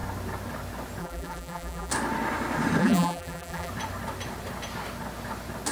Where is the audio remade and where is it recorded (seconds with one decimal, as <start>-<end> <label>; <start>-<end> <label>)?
0.0-1.0 recorded; 1.0-1.9 remade; 1.9-2.8 recorded; 2.8-3.7 remade; 3.7-5.7 recorded